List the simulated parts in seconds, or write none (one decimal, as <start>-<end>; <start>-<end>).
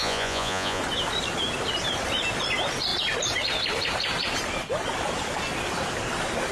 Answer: 0.0-0.8